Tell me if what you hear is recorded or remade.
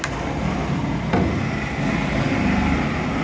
recorded